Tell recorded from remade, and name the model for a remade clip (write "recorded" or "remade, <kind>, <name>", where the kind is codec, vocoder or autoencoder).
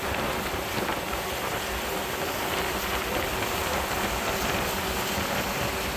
recorded